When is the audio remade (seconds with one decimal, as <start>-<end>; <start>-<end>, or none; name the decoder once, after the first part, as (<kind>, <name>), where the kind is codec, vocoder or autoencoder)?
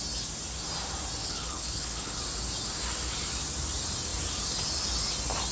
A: 1.2-2.2 (codec, HILCodec)